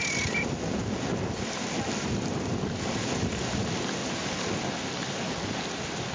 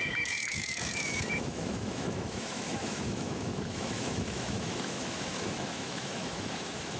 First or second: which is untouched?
first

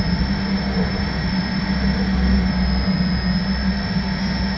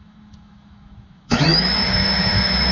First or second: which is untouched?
first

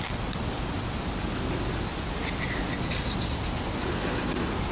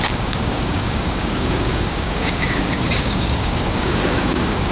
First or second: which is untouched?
first